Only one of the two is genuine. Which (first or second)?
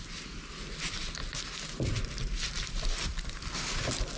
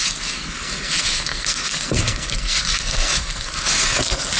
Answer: first